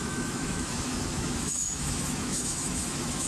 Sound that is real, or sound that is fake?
fake